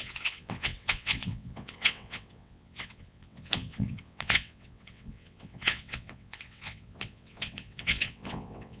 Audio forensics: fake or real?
fake